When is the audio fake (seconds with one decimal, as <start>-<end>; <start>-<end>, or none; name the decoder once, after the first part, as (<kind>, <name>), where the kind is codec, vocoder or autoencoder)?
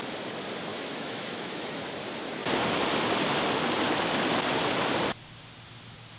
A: 0.7-1.8 (autoencoder, DAC-VAE)